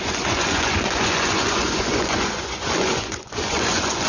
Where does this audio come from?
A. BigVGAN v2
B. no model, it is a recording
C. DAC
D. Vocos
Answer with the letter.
D